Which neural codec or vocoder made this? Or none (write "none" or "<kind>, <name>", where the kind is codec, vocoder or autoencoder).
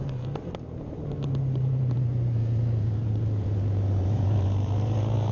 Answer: vocoder, BigVGAN v2